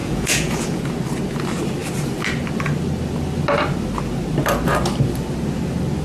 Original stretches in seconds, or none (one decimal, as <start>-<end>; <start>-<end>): 0.8-6.0